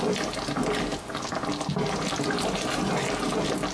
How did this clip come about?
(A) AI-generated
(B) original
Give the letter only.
B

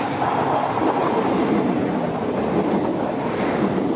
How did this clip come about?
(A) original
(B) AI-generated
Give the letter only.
A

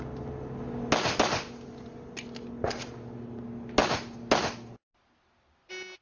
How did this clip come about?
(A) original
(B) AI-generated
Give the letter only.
A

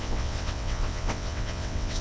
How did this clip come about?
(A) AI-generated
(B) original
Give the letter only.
A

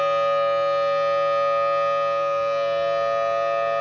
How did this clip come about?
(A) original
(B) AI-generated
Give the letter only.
A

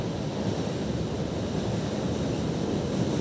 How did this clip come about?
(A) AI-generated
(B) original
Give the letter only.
B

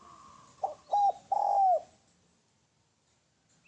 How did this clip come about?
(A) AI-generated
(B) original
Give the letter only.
B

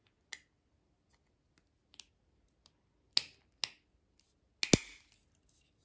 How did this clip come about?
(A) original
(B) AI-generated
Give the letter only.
A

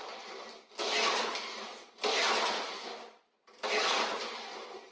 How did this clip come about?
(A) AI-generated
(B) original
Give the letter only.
B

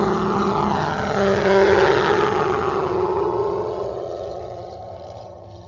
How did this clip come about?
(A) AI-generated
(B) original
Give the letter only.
A